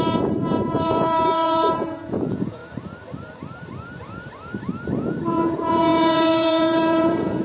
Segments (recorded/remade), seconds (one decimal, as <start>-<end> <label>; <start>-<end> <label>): 0.0-2.6 remade; 2.6-4.9 recorded; 4.9-7.4 remade